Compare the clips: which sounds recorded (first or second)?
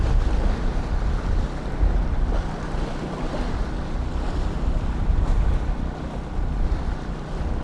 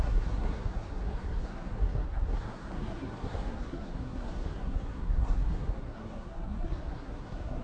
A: first